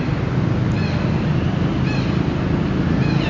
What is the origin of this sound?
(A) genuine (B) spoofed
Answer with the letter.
A